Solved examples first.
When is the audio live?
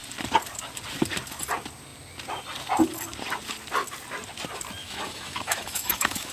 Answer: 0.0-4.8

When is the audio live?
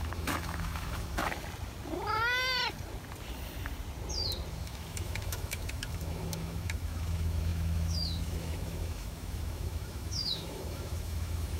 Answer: 1.2-4.5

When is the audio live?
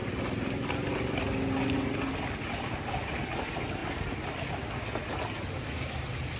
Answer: 0.0-6.4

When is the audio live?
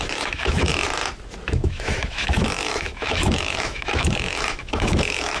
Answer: 0.7-1.5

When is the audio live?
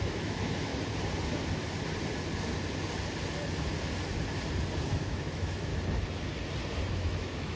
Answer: 0.7-4.9; 5.7-6.9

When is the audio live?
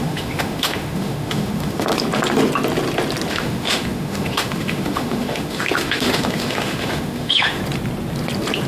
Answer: 1.9-3.3; 7.6-8.7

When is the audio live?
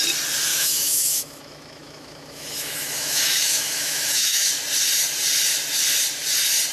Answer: 0.0-0.5; 4.5-6.7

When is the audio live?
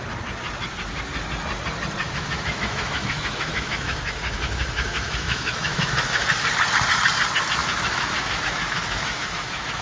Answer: 0.0-2.0; 6.2-7.6